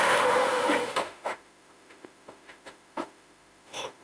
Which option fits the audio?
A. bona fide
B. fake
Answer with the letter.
B